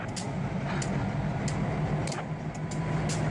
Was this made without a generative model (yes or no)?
yes